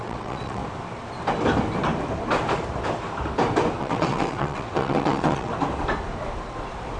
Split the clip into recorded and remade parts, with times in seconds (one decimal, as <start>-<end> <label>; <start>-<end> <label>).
0.0-0.6 remade; 0.6-3.8 recorded; 3.8-5.5 remade; 5.5-7.0 recorded